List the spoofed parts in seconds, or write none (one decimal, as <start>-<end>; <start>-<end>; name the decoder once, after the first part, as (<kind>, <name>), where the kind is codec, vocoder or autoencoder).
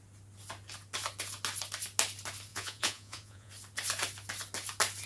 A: 2.5-3.5 (vocoder, Vocos)